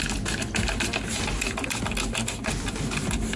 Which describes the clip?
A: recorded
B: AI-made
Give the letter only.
A